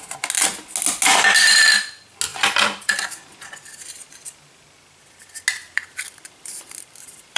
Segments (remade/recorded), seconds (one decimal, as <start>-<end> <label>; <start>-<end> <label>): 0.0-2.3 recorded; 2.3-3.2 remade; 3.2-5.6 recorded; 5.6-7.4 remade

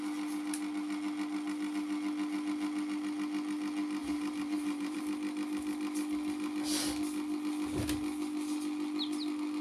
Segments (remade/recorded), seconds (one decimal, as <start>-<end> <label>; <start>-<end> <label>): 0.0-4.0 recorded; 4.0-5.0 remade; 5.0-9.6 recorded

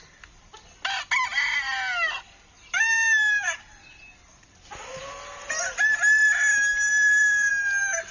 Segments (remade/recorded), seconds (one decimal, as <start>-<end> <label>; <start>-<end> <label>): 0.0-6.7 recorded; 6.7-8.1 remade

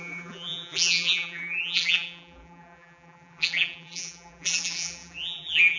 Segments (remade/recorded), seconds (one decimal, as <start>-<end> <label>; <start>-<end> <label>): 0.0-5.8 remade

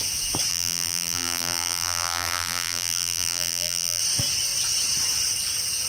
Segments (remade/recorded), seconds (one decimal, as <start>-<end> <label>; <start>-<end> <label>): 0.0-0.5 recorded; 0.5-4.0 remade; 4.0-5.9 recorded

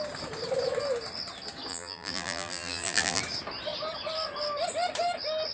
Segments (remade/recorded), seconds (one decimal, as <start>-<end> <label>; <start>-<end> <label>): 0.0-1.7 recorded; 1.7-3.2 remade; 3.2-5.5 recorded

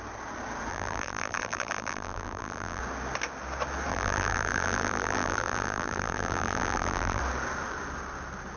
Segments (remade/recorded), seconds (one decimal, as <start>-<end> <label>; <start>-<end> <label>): 0.0-0.7 recorded; 0.7-2.8 remade; 2.8-3.9 recorded; 3.9-7.2 remade; 7.2-8.6 recorded

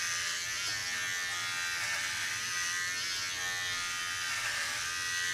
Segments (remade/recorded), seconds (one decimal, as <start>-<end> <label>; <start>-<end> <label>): 0.0-5.3 recorded